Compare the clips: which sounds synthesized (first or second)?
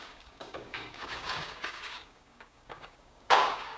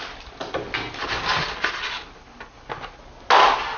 first